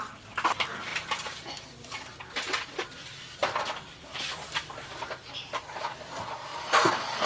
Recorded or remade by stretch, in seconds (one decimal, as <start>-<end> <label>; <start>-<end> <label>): 0.0-3.4 recorded; 3.4-5.6 remade; 5.6-7.3 recorded